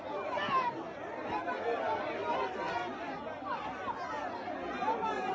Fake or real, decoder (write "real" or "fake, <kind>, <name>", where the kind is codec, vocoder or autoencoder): real